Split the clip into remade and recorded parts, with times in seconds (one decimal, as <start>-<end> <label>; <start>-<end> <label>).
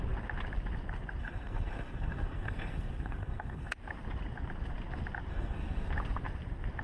0.0-1.2 recorded; 1.2-3.7 remade; 3.7-5.3 recorded; 5.3-5.9 remade; 5.9-6.8 recorded